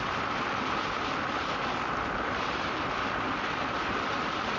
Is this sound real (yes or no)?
yes